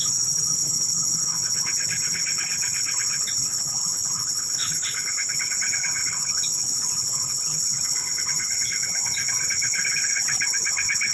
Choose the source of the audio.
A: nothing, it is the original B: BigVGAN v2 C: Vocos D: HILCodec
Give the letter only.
D